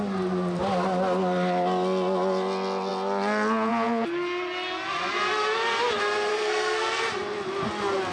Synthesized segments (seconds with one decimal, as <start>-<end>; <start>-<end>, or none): 6.3-7.0